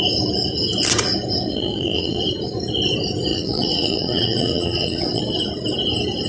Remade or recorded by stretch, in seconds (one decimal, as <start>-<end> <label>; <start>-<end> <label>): 0.0-1.5 recorded; 1.5-2.2 remade; 2.2-3.3 recorded; 3.3-5.2 remade; 5.2-6.3 recorded